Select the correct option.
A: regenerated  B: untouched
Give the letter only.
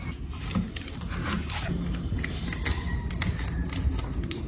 B